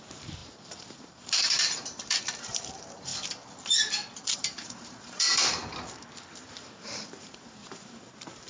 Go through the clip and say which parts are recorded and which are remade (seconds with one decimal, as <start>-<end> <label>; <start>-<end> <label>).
0.0-3.1 remade; 3.1-4.1 recorded; 4.1-5.3 remade; 5.3-6.6 recorded; 6.6-8.5 remade